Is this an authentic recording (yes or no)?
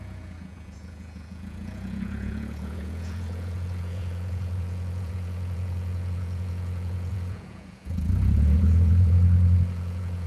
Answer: no